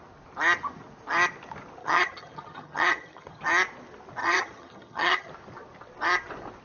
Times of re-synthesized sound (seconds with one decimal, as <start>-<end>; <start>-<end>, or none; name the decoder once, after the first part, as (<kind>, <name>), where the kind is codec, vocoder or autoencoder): 1.8-3.4 (vocoder, HiFi-GAN); 4.2-5.3